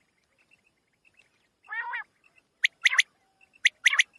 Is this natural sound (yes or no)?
yes